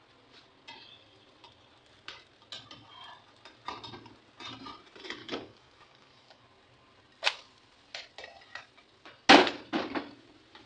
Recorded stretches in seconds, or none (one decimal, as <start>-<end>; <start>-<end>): 0.0-5.2; 6.4-10.7